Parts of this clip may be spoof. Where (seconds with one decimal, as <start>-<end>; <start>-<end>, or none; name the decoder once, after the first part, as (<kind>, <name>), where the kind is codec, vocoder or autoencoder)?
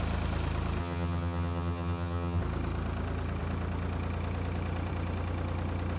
0.8-2.4 (vocoder, HiFi-GAN)